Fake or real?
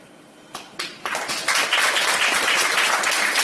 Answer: real